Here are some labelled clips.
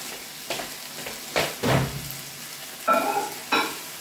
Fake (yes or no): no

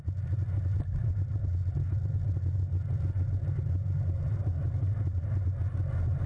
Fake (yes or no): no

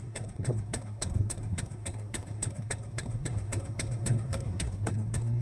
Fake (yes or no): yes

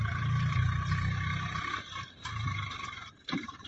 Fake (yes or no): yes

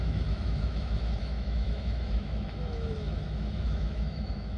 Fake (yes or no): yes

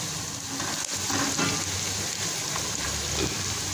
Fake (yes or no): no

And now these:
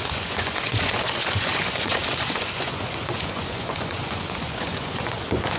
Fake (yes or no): yes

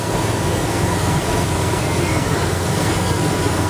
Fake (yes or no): yes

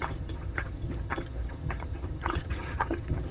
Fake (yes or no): yes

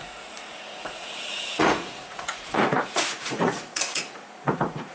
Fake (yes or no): yes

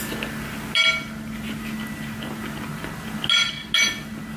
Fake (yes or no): no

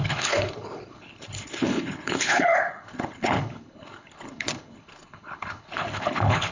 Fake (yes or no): yes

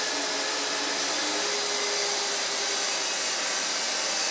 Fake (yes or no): no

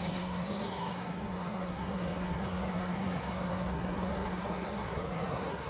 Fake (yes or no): yes